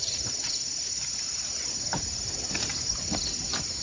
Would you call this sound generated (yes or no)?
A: no